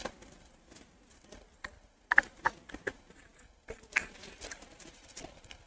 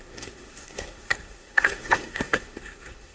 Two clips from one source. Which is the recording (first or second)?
first